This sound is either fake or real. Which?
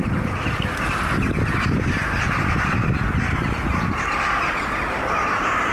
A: real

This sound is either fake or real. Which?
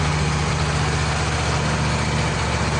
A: fake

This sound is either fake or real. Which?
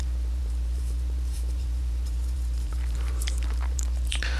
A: fake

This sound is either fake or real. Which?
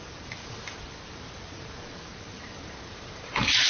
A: fake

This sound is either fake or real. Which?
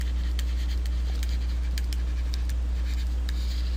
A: real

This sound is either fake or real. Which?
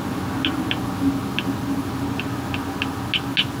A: real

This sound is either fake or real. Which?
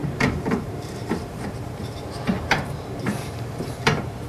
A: fake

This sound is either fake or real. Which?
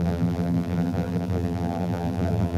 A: fake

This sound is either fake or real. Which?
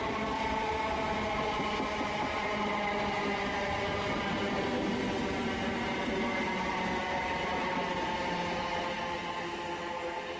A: real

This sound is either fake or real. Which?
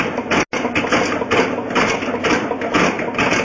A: real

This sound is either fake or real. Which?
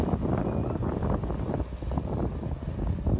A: real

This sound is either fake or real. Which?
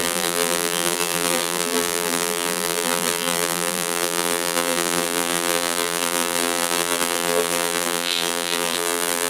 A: fake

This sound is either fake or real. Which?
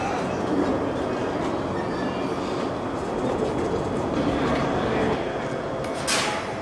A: real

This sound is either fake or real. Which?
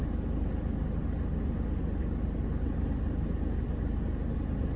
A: real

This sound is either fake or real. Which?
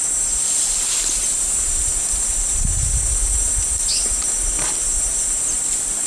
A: real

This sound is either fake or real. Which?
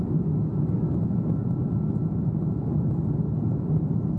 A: real